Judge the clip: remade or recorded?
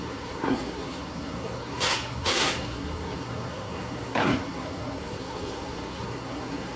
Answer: remade